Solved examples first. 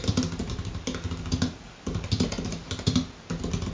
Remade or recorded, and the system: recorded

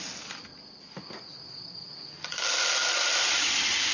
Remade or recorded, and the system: recorded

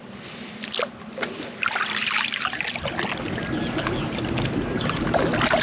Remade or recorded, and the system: recorded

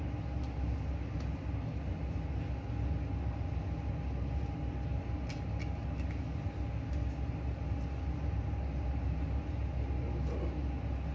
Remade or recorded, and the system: recorded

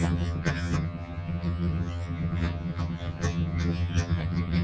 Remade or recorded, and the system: remade, vocoder, HiFi-GAN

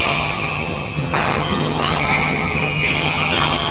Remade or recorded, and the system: remade, vocoder, HiFi-GAN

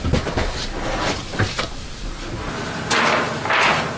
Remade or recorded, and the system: recorded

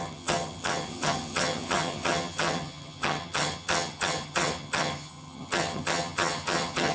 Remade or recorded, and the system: remade, vocoder, HiFi-GAN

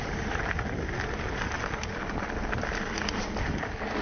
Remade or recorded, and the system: recorded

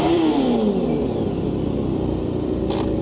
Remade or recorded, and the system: recorded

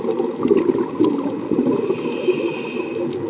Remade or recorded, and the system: recorded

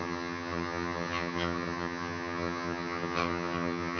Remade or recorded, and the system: remade, vocoder, HiFi-GAN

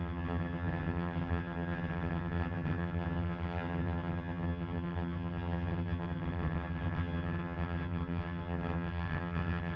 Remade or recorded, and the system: remade, vocoder, HiFi-GAN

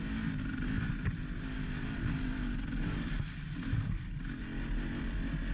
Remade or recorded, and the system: recorded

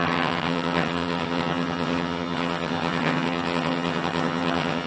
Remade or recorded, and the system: remade, vocoder, HiFi-GAN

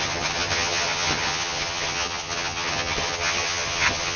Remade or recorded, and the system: remade, vocoder, HiFi-GAN